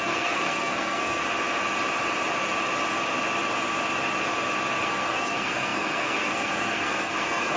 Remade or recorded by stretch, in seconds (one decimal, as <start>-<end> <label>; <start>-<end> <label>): 0.0-1.2 remade; 1.2-4.8 recorded; 4.8-7.6 remade